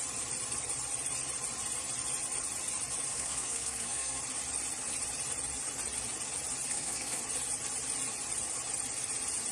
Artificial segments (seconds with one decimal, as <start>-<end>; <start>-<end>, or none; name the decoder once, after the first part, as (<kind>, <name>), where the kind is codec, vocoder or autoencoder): 3.1-4.2 (codec, SNAC); 6.7-7.2